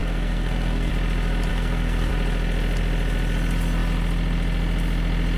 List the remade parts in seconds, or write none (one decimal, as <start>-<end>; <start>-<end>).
0.0-0.9; 1.5-2.1